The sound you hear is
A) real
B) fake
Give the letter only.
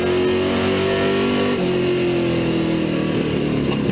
A